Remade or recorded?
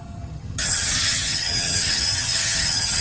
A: remade